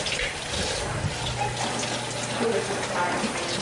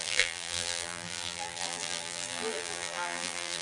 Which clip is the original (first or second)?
first